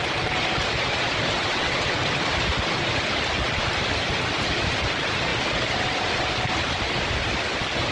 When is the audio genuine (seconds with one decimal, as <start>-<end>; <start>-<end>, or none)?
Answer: 0.0-1.5; 2.0-7.9